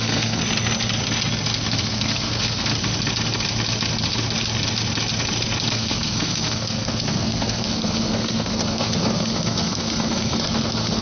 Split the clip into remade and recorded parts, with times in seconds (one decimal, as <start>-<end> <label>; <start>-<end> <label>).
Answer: 0.0-0.4 remade; 0.4-1.9 recorded; 1.9-2.7 remade; 2.7-5.7 recorded; 5.7-11.0 remade

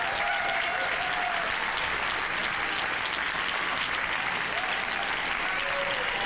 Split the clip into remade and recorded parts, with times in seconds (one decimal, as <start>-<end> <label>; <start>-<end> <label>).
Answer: 0.0-6.3 recorded

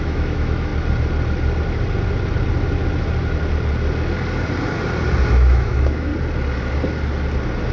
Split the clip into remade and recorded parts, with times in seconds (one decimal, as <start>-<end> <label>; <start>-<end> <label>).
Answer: 0.0-0.7 remade; 0.7-5.3 recorded; 5.3-6.1 remade; 6.1-7.7 recorded

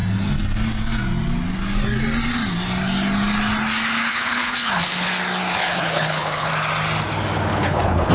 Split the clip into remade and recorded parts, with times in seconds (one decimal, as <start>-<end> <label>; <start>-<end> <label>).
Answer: 0.0-4.1 recorded; 4.1-5.1 remade; 5.1-5.5 recorded; 5.5-6.5 remade; 6.5-7.5 recorded; 7.5-8.1 remade

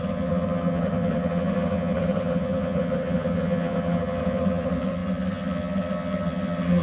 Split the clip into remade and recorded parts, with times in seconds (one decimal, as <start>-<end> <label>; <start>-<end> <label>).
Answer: 0.0-6.8 remade

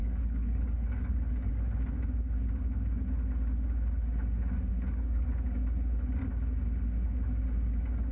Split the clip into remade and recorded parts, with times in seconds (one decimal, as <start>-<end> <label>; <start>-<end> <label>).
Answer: 0.0-1.5 remade; 1.5-4.7 recorded; 4.7-5.3 remade; 5.3-8.1 recorded

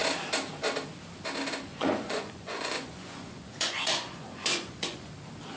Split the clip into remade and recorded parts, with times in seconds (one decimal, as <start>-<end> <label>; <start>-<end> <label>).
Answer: 0.0-1.7 recorded; 1.7-5.1 remade; 5.1-5.6 recorded